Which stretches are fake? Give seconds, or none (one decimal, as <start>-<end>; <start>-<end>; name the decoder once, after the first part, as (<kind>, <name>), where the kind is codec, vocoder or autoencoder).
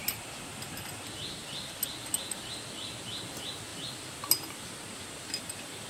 none